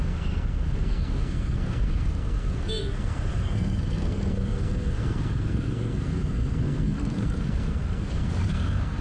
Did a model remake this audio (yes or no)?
yes